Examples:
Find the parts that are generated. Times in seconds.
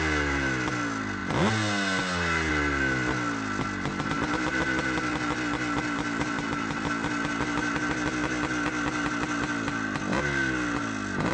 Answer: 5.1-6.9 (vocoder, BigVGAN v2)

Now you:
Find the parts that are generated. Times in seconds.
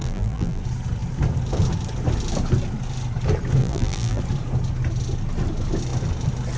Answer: 0.0-0.6 (vocoder, BigVGAN v2); 3.6-4.2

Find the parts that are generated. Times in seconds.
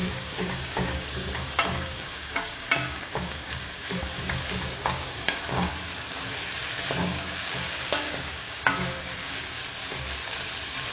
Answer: 0.0-5.9 (codec, DAC); 7.0-9.6